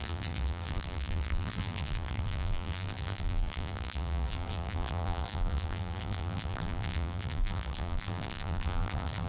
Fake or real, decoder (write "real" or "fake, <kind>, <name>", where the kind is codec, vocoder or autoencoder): fake, vocoder, BigVGAN v2